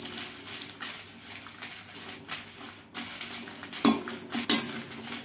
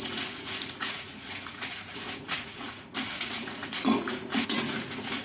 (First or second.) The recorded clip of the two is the first